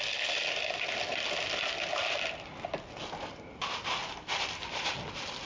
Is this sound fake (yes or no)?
no